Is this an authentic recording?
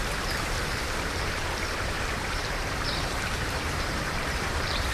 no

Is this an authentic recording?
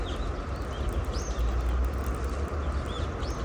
yes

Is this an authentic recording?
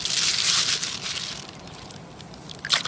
yes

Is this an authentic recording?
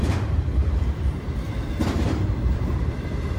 no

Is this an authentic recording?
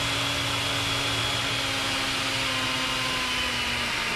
yes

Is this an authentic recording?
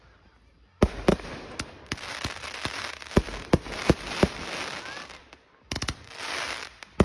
no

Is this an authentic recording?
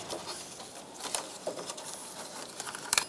no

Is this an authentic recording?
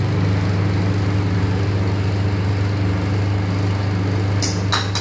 yes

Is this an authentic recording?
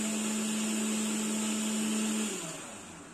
yes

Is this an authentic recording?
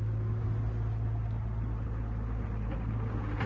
yes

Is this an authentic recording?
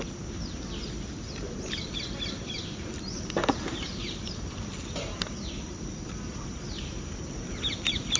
no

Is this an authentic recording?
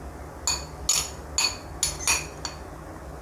yes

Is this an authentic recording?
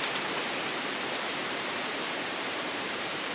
no